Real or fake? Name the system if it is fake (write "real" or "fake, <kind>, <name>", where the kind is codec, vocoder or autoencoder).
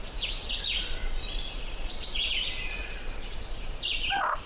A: fake, vocoder, Vocos